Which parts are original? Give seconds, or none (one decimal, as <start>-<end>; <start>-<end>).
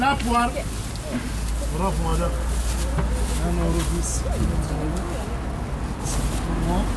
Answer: 0.0-7.0